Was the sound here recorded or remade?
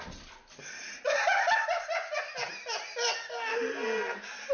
recorded